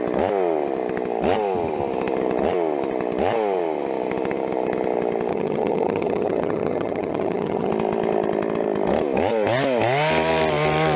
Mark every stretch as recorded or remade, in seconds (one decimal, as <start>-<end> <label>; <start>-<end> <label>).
0.0-5.3 recorded; 5.3-7.7 remade; 7.7-11.0 recorded